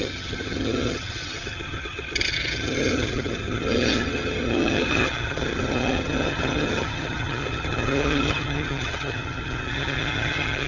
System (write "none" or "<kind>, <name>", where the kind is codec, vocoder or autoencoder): vocoder, HiFi-GAN